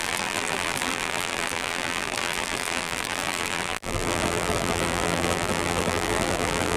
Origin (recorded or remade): remade